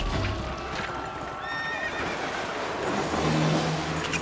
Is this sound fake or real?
real